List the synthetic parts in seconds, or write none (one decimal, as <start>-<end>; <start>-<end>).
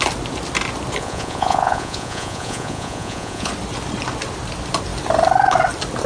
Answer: 1.0-3.5